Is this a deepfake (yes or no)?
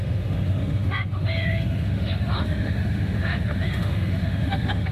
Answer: yes